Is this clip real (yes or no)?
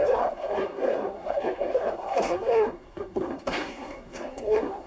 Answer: no